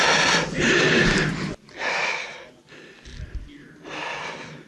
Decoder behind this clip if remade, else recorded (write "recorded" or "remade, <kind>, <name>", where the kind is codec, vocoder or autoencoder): recorded